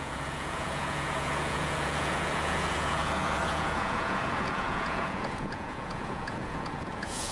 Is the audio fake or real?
fake